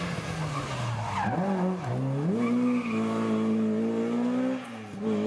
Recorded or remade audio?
recorded